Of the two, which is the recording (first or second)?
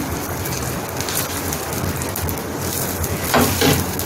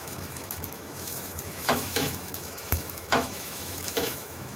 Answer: first